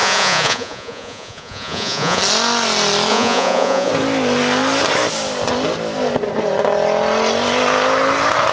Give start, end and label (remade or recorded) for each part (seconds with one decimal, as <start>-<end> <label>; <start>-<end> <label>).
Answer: 0.0-2.2 remade; 2.2-3.1 recorded; 3.1-3.9 remade; 3.9-8.5 recorded

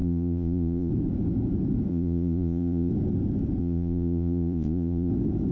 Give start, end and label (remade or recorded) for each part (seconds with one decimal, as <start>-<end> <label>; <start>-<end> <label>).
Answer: 0.0-0.9 remade; 0.9-1.9 recorded; 1.9-2.9 remade; 2.9-3.6 recorded; 3.6-5.1 remade; 5.1-5.5 recorded

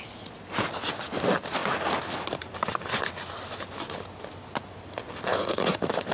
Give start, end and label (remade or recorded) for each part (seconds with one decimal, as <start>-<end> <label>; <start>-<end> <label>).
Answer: 0.0-5.3 recorded; 5.3-6.1 remade

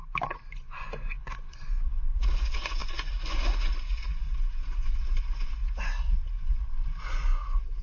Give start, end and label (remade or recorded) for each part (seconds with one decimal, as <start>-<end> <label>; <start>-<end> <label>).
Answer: 0.0-7.8 remade

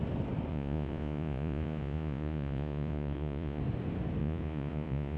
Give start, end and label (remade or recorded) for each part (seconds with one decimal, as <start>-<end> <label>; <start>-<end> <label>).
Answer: 0.0-0.5 recorded; 0.5-3.6 remade; 3.6-4.2 recorded; 4.2-5.2 remade

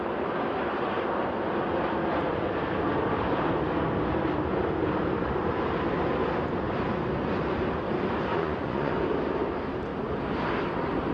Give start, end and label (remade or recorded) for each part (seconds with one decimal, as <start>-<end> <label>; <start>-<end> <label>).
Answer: 0.0-8.3 recorded; 8.3-8.9 remade; 8.9-11.1 recorded